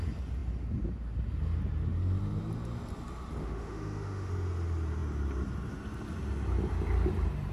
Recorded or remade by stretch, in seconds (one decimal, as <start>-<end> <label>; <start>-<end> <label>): 0.0-3.4 recorded; 3.4-4.3 remade; 4.3-7.5 recorded